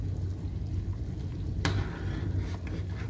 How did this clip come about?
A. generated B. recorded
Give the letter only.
A